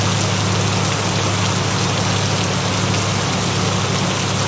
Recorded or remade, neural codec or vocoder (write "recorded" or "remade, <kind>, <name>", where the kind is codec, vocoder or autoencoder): recorded